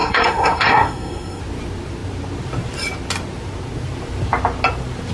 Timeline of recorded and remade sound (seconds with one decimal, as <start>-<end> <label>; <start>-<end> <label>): 0.0-1.4 remade; 1.4-5.1 recorded